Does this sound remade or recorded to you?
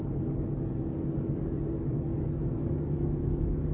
remade